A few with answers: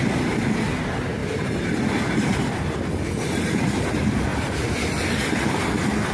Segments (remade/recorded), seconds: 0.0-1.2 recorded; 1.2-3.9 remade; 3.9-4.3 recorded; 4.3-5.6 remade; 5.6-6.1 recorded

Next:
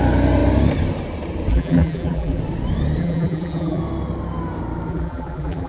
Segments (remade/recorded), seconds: 0.0-1.5 recorded; 1.5-2.4 remade; 2.4-3.0 recorded; 3.0-3.8 remade; 3.8-4.9 recorded; 4.9-5.7 remade

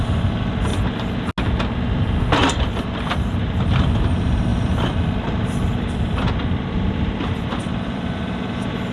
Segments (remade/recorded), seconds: 0.0-0.7 remade; 0.7-2.2 recorded; 2.2-8.9 remade